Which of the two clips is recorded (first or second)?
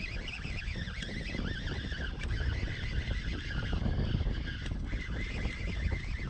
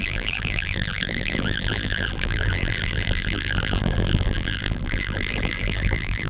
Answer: first